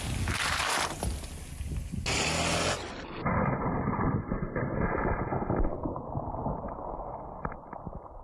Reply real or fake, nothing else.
real